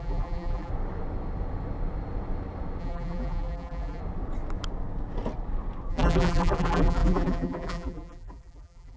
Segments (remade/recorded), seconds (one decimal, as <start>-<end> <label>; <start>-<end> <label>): 0.0-0.7 remade; 0.7-2.8 recorded; 2.8-4.0 remade; 4.0-5.9 recorded; 5.9-9.0 remade